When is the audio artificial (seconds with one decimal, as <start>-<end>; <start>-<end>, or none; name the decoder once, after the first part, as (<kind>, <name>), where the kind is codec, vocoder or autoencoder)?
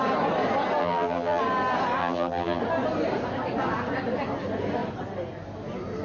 0.8-1.4 (vocoder, BigVGAN v2); 2.0-2.6